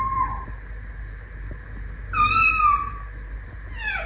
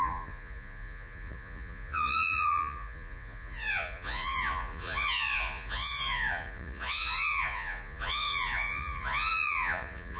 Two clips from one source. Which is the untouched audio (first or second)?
first